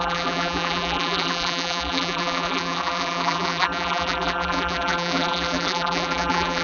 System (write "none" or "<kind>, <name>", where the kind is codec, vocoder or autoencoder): vocoder, BigVGAN v2